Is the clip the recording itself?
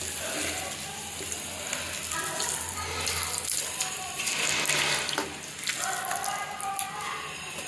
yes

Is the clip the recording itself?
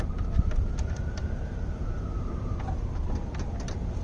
yes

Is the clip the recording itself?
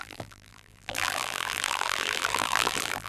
no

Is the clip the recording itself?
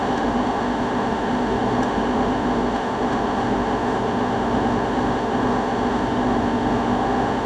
no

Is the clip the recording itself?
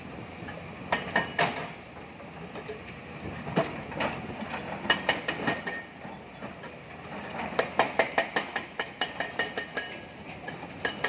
yes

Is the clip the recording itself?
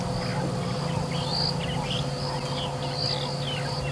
yes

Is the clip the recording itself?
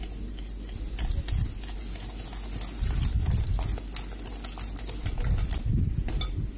yes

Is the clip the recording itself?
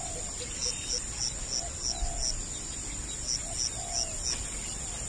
yes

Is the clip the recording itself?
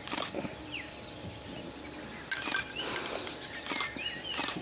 yes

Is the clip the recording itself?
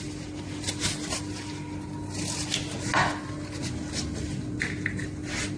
yes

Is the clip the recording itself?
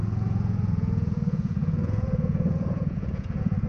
no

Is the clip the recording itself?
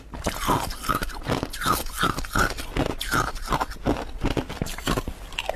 yes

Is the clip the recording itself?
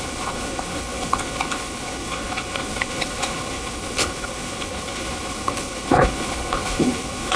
no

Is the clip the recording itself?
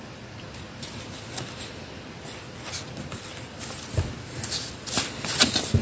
yes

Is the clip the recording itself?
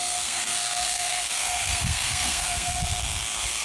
no